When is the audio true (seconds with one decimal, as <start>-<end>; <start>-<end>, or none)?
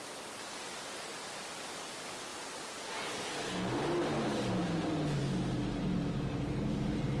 0.0-7.2